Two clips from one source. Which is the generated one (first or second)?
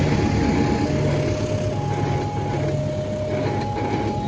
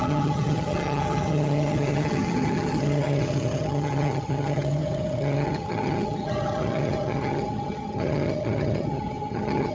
second